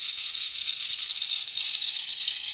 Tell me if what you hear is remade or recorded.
remade